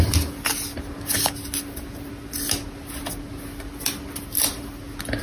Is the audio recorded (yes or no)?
yes